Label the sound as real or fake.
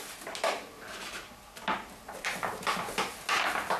real